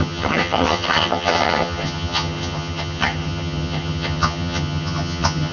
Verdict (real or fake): fake